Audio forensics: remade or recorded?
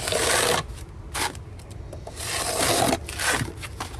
recorded